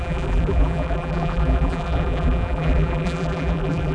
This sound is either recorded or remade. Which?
remade